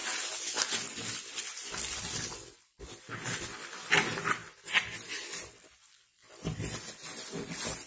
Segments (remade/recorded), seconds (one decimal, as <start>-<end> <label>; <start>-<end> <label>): 0.0-7.9 recorded